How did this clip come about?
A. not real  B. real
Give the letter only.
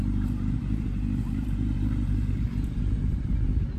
A